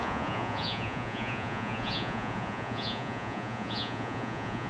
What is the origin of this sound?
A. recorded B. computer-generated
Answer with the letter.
B